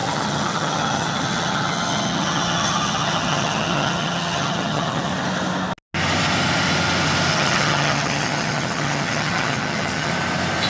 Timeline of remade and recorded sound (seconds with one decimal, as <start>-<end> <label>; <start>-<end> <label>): 0.0-5.1 remade; 5.1-7.3 recorded; 7.3-10.1 remade; 10.1-10.7 recorded